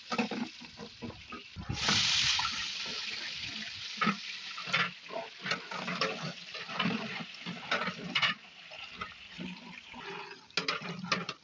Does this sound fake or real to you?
real